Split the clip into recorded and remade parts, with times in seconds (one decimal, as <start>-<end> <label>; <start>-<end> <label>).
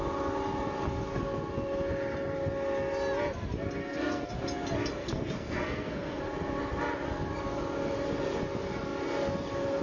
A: 0.0-3.8 recorded; 3.8-4.3 remade; 4.3-5.0 recorded; 5.0-6.2 remade; 6.2-9.8 recorded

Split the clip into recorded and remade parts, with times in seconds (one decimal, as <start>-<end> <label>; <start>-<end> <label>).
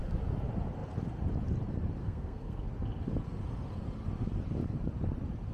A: 0.0-2.0 recorded; 2.0-2.7 remade; 2.7-5.5 recorded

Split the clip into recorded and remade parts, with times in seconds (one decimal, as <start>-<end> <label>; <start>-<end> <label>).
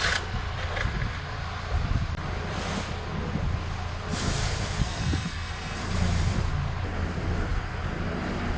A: 0.0-4.8 recorded; 4.8-5.8 remade; 5.8-8.6 recorded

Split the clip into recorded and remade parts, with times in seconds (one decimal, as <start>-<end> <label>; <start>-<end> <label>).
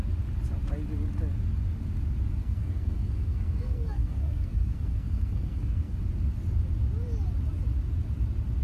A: 0.0-2.4 recorded; 2.4-6.0 remade; 6.0-8.6 recorded